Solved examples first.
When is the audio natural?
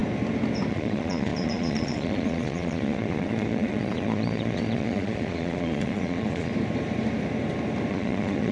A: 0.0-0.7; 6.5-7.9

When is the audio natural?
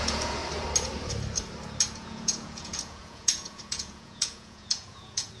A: 0.4-1.9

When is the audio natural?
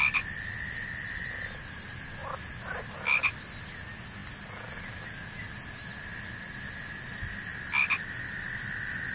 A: 0.0-9.1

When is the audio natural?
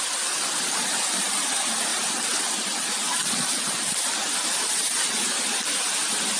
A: 0.0-6.4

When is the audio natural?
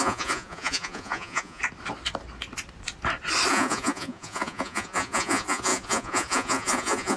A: 1.6-3.5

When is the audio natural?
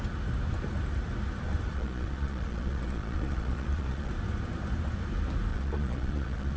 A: 0.0-1.7; 4.1-5.5